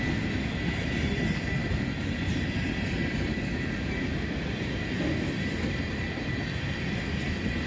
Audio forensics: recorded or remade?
recorded